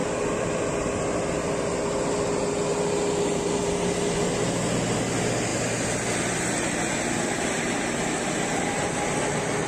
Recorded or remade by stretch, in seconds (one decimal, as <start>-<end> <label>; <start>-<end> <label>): 0.0-9.7 recorded